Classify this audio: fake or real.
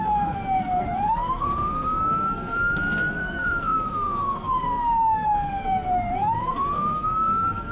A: fake